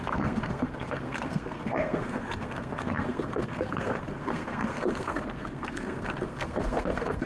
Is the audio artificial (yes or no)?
yes